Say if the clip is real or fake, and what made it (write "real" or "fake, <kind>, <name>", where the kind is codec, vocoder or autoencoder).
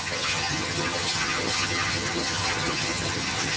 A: fake, vocoder, HiFi-GAN